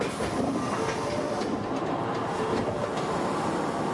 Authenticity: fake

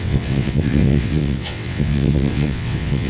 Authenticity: fake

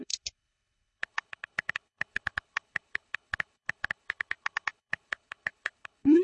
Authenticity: fake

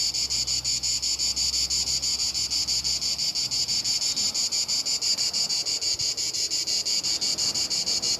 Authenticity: real